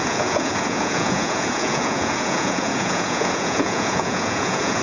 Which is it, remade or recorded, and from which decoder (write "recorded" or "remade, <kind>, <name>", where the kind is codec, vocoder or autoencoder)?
remade, vocoder, Vocos